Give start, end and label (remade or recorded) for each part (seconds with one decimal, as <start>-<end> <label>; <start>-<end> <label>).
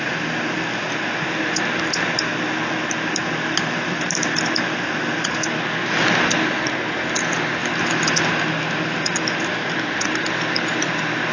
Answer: 0.0-11.3 recorded